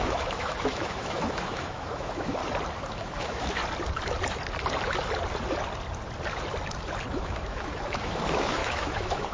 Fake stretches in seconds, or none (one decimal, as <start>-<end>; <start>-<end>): 0.0-2.4; 2.9-3.6; 7.1-9.3